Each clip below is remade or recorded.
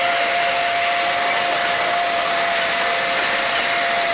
recorded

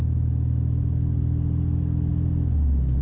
recorded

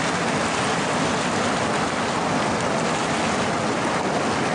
recorded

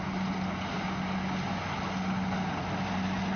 recorded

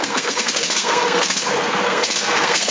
remade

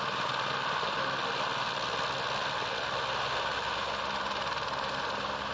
recorded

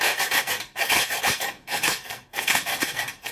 remade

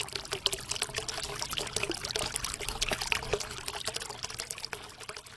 recorded